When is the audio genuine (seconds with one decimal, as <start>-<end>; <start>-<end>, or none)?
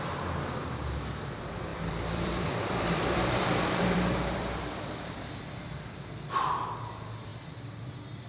none